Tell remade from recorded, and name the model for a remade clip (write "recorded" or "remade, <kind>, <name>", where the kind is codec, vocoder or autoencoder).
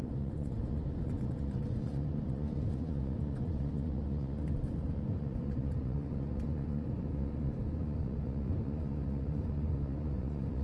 remade, vocoder, Vocos